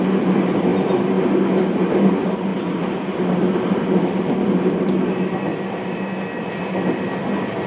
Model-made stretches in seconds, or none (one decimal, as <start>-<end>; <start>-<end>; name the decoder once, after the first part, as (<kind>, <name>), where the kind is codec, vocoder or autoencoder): 2.5-4.9 (vocoder, BigVGAN v2)